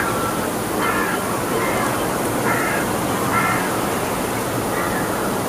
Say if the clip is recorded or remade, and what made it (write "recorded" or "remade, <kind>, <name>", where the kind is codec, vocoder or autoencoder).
recorded